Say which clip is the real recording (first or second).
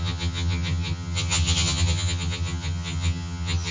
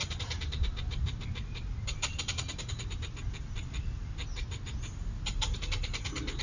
second